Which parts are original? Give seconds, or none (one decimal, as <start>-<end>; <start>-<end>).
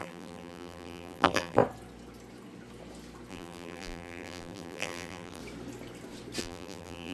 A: 1.6-3.3; 5.4-6.4